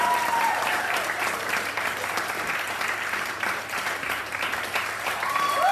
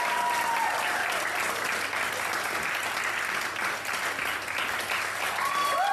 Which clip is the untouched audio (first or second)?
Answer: second